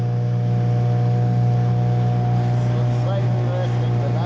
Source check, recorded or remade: recorded